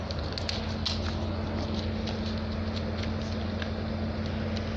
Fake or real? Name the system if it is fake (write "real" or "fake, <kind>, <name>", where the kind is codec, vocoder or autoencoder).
real